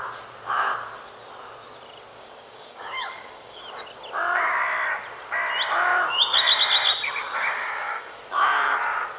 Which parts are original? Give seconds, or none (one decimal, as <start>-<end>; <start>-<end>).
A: 0.0-2.1; 3.6-7.2; 8.2-9.2